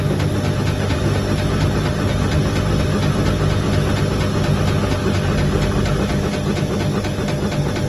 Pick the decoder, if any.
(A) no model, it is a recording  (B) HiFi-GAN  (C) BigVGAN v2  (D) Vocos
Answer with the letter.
A